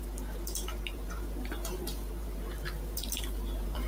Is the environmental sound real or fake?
fake